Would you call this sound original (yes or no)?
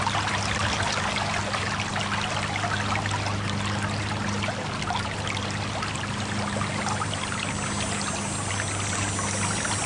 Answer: yes